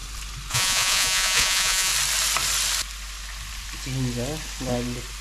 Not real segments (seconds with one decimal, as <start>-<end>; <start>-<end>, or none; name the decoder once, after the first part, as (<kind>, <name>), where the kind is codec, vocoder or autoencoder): 0.5-1.9 (vocoder, Vocos)